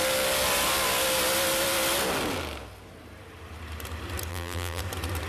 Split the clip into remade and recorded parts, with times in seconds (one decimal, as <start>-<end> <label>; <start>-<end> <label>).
0.0-4.3 recorded; 4.3-4.8 remade; 4.8-5.3 recorded